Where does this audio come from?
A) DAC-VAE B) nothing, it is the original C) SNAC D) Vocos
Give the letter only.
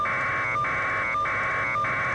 B